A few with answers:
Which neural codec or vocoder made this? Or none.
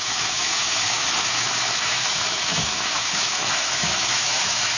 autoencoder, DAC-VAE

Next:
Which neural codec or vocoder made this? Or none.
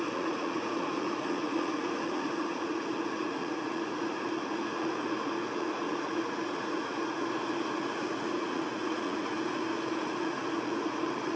vocoder, Vocos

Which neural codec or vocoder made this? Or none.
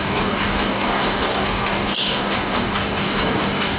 codec, DAC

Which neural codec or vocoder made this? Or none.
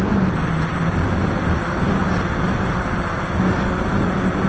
none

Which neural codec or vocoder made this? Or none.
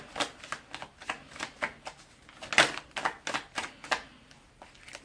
none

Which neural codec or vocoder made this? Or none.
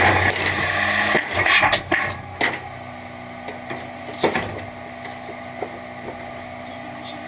none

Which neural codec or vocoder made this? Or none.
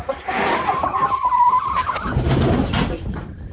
vocoder, BigVGAN v2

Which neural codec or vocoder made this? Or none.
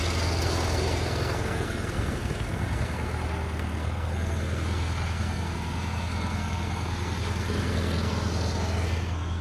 codec, SNAC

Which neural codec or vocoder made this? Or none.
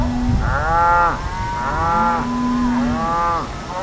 none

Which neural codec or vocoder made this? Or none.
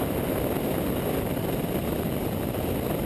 none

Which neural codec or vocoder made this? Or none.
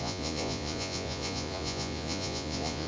vocoder, Vocos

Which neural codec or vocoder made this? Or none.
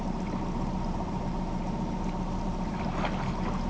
none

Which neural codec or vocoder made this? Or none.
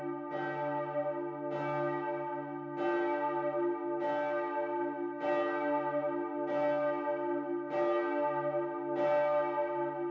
none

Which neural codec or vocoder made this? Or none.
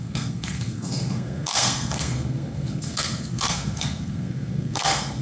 codec, SNAC